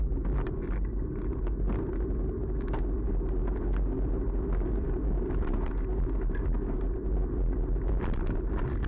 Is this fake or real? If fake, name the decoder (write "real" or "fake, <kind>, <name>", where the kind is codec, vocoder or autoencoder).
real